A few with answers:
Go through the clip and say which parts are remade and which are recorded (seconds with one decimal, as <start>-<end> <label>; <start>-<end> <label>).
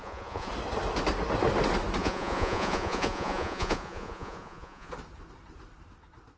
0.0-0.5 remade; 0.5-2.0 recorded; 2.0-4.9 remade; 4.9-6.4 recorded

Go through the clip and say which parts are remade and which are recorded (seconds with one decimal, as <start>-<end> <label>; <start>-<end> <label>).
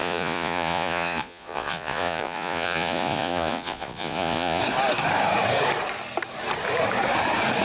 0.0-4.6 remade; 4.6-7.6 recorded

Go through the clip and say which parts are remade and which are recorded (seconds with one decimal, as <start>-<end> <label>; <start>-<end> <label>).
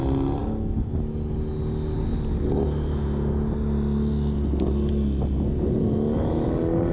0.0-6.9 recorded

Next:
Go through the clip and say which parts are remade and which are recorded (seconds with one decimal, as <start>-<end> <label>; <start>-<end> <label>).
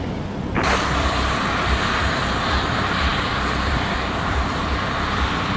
0.0-5.6 recorded